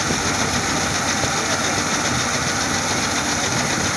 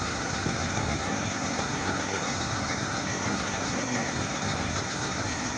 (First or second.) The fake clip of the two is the second